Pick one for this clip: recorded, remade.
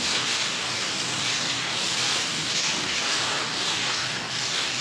remade